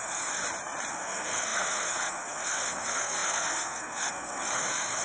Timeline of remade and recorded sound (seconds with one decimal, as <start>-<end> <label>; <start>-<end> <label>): 0.0-0.4 remade; 0.4-0.9 recorded; 0.9-5.0 remade